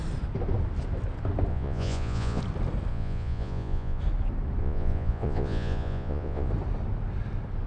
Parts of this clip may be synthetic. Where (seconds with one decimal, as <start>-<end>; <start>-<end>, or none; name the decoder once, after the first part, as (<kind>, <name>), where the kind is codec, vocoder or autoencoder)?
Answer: 1.5-2.4 (vocoder, Vocos); 2.9-4.0; 4.6-6.5